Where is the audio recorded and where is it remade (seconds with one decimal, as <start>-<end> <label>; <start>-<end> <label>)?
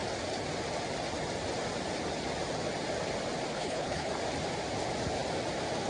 0.0-3.5 recorded; 3.5-4.1 remade; 4.1-5.9 recorded